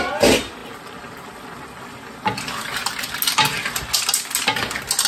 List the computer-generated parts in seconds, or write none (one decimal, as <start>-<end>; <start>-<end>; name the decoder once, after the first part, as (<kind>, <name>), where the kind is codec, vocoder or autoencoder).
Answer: none

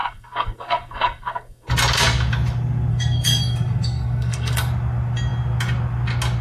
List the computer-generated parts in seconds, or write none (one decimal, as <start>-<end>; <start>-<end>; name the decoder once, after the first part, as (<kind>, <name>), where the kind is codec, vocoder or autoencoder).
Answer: 0.0-1.7 (codec, SNAC); 2.9-4.7

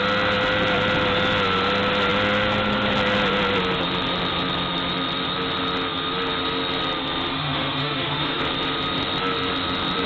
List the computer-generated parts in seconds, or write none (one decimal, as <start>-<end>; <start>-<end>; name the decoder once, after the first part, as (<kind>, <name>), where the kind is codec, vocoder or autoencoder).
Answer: 7.3-8.4 (autoencoder, DAC-VAE)